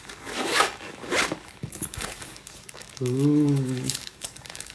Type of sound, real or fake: fake